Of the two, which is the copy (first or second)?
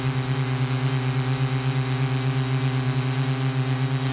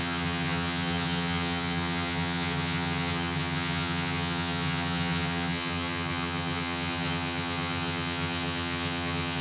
second